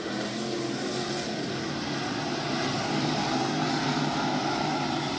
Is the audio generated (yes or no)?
no